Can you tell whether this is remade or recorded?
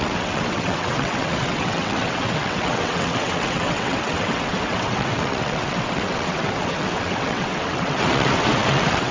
remade